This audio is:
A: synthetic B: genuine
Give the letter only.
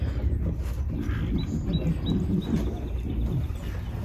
B